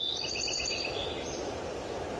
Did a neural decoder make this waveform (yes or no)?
no